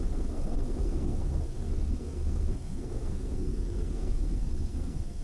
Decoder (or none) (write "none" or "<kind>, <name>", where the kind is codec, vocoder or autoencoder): codec, SNAC